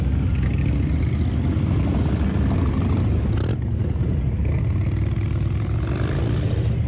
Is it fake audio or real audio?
real